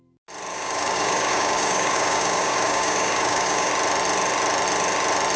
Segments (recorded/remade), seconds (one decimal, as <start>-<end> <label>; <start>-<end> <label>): 0.0-0.5 recorded; 0.5-3.7 remade; 3.7-5.4 recorded